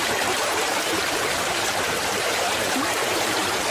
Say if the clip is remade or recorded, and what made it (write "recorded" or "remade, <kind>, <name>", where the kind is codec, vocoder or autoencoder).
remade, vocoder, BigVGAN v2